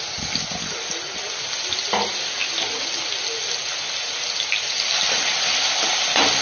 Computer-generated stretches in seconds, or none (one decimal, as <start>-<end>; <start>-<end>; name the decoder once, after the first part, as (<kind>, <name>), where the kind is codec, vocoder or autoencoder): none